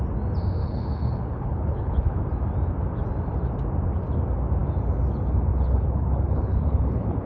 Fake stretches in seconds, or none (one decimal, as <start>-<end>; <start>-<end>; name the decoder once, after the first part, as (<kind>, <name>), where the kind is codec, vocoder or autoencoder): 0.6-2.2 (codec, HILCodec); 5.5-7.3